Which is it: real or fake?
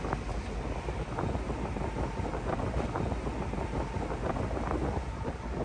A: real